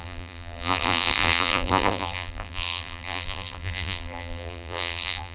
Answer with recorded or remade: remade